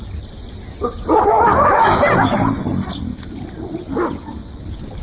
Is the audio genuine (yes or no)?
yes